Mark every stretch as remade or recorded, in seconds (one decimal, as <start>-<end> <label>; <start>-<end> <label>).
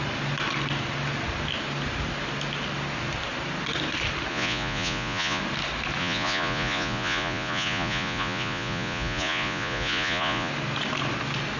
0.0-4.3 recorded; 4.3-5.4 remade; 5.4-6.0 recorded; 6.0-10.5 remade; 10.5-11.6 recorded